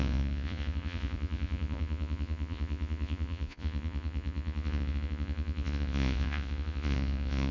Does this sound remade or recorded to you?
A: remade